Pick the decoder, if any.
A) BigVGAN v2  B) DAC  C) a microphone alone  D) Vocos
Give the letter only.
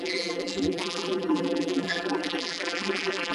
A